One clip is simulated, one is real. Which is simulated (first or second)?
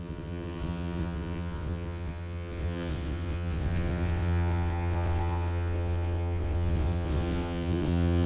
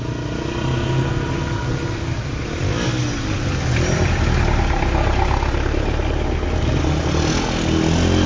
first